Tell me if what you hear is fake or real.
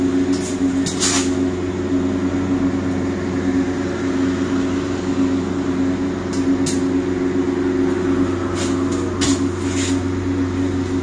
real